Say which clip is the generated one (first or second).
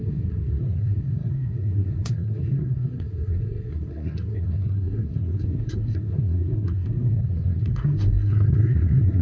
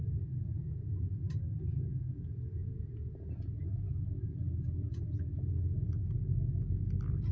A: first